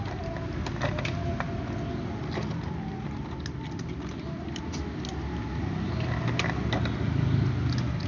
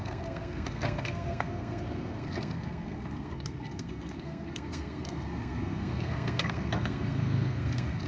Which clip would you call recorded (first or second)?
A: first